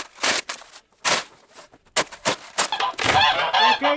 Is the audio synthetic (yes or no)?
no